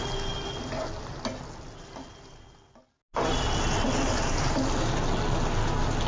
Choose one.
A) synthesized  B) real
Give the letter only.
B